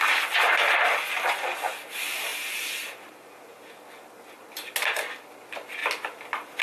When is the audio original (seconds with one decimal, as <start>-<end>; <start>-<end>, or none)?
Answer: 0.0-6.6